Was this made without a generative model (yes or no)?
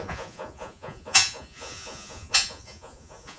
no